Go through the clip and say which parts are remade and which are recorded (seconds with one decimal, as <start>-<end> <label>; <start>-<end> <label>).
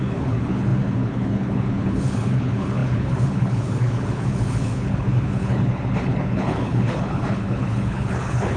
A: 0.0-8.6 remade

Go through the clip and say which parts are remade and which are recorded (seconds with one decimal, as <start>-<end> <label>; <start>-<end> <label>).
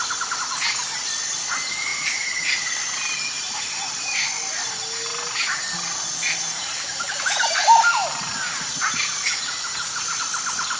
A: 0.0-1.9 recorded; 1.9-4.3 remade; 4.3-5.1 recorded; 5.1-10.2 remade; 10.2-10.8 recorded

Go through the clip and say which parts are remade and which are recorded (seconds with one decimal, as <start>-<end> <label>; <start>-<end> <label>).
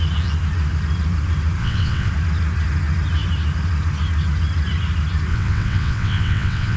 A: 0.0-1.6 recorded; 1.6-2.1 remade; 2.1-5.3 recorded; 5.3-6.8 remade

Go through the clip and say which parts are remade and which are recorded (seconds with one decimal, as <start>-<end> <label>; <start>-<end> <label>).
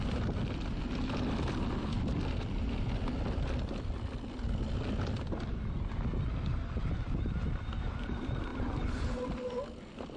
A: 0.0-8.5 recorded; 8.5-9.5 remade; 9.5-10.2 recorded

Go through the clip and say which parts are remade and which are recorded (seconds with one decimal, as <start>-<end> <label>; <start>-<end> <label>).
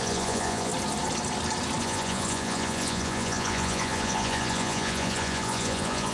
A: 0.0-0.7 remade; 0.7-1.8 recorded; 1.8-6.1 remade